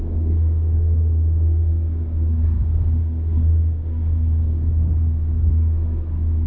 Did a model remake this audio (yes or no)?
yes